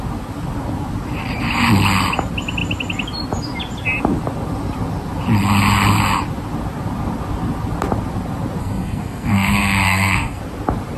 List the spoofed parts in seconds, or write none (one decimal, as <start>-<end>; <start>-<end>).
8.6-10.4